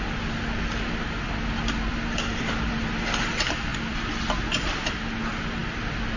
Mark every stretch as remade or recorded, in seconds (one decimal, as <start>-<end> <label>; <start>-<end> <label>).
0.0-1.9 recorded; 1.9-2.7 remade; 2.7-6.2 recorded